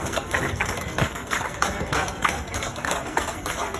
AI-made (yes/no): yes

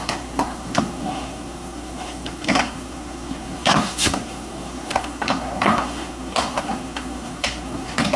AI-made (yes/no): yes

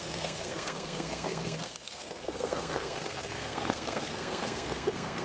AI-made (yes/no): yes